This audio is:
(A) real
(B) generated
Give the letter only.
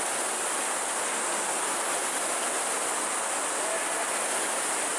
A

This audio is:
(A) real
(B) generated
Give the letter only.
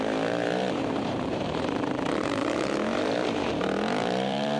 B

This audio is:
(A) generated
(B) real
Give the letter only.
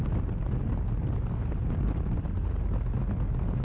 B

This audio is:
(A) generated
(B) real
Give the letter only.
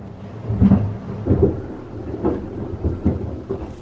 B